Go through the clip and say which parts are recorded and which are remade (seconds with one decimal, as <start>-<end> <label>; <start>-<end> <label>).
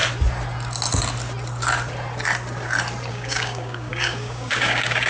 0.0-3.1 recorded; 3.1-5.1 remade